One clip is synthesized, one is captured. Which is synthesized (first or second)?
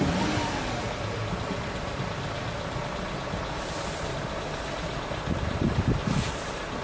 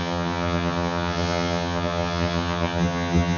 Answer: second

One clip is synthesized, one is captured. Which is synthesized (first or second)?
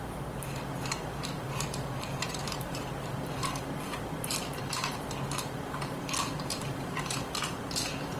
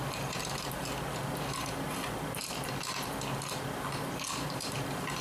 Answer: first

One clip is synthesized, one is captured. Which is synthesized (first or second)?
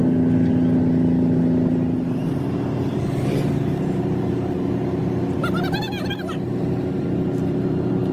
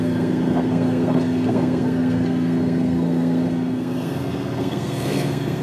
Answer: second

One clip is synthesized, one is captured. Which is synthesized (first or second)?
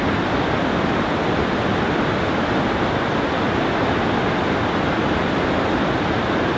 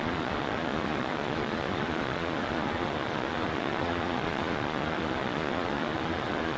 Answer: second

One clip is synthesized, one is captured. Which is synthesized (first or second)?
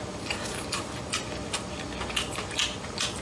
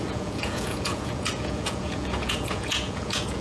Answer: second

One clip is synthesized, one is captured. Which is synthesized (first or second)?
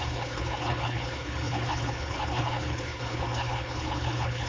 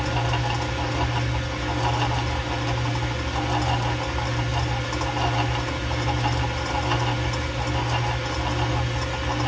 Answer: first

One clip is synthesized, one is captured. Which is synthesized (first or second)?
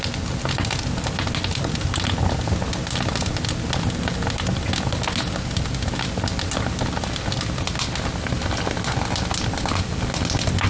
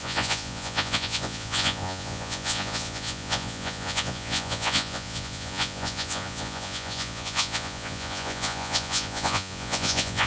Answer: second